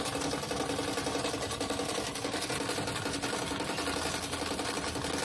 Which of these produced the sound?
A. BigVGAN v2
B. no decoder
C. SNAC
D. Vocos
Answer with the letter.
B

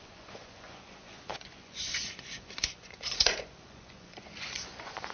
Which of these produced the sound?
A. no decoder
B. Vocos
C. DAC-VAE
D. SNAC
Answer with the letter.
B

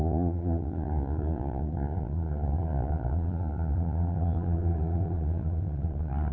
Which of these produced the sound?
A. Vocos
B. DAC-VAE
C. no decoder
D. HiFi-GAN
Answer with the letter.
A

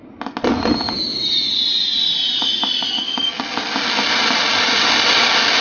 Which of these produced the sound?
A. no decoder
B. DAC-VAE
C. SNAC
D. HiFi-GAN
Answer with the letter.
A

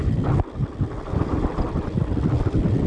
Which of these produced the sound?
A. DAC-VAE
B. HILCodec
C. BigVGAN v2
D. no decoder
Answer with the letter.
D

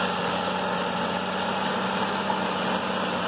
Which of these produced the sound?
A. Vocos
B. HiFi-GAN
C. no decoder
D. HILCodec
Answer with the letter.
C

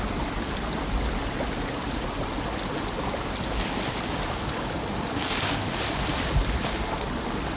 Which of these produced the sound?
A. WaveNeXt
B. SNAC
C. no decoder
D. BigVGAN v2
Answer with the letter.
C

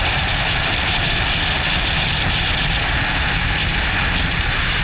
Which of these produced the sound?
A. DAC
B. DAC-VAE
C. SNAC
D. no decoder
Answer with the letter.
D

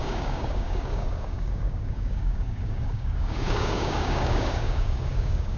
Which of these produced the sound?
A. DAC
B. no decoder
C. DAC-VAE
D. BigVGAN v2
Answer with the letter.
A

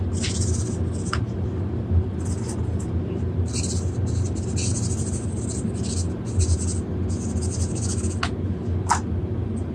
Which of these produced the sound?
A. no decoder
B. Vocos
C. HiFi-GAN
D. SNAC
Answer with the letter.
A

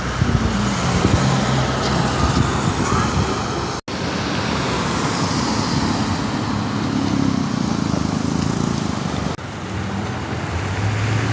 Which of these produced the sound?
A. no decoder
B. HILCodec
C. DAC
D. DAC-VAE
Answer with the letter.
A